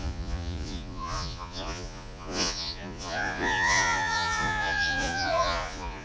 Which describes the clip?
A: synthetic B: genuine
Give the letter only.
A